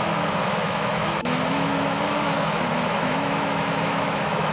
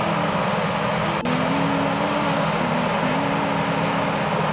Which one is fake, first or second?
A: first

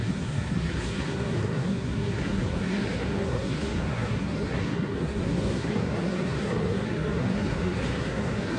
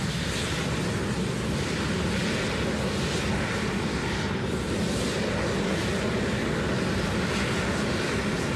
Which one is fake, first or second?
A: first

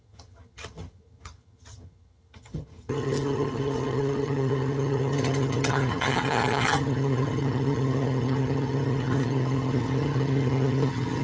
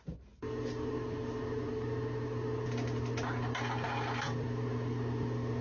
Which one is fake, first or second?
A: first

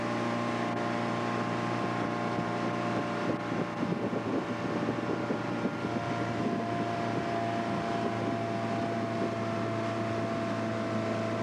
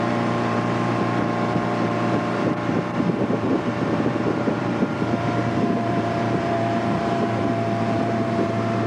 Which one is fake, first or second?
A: second